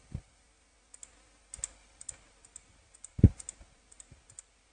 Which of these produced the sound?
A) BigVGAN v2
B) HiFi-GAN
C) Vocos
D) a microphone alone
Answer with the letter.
D